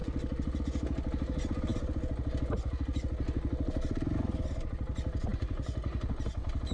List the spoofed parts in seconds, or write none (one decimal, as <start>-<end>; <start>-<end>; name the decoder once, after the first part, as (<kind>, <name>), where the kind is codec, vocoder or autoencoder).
5.3-6.1 (vocoder, BigVGAN v2)